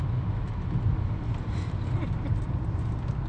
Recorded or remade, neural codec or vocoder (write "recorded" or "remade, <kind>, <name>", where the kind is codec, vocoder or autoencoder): recorded